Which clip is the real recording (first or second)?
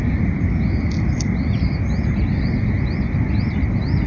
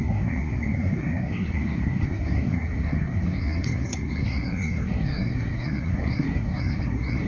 first